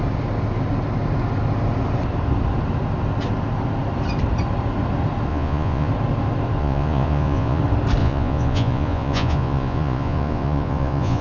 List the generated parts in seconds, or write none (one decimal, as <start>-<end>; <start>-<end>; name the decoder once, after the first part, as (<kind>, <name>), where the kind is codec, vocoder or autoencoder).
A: 5.3-5.9 (vocoder, Vocos); 6.6-7.6; 8.0-11.2